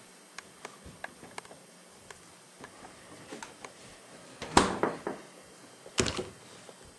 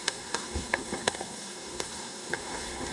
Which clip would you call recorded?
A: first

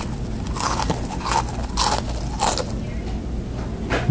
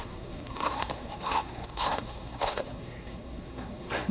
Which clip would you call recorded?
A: first